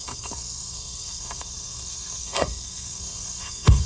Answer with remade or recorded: remade